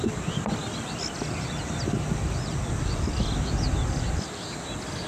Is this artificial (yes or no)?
no